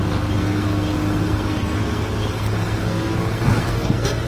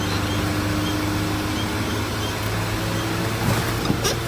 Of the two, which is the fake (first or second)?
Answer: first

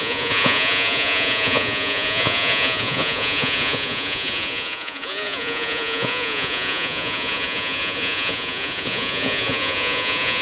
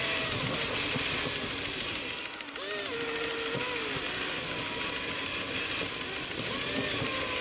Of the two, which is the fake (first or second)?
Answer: first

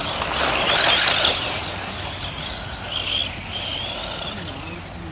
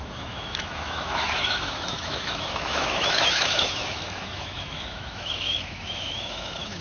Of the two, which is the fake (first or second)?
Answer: second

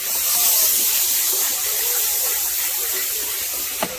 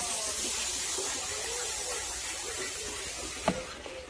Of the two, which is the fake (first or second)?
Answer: first